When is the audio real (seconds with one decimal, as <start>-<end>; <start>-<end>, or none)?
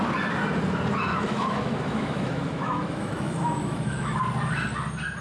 0.0-1.1; 4.2-5.2